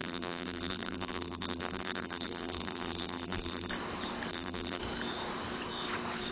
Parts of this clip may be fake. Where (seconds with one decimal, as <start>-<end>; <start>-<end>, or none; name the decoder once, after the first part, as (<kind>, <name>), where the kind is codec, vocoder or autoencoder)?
0.0-3.7 (vocoder, BigVGAN v2); 4.3-4.8

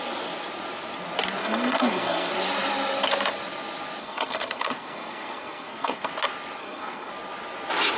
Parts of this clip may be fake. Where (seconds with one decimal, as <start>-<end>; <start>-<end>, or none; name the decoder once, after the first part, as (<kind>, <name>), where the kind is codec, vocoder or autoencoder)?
1.4-2.3 (codec, SNAC); 4.0-6.1; 6.6-7.1

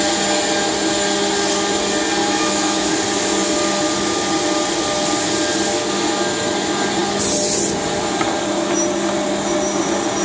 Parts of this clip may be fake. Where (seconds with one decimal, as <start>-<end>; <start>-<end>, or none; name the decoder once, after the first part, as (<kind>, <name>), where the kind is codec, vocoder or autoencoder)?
2.2-2.9 (autoencoder, DAC-VAE)

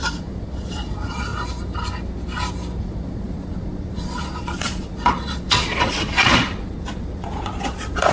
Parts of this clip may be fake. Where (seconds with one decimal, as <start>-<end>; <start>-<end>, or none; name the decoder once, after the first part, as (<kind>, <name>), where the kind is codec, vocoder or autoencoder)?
0.0-1.3 (vocoder, Vocos); 2.8-8.1